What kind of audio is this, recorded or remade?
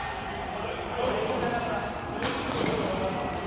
recorded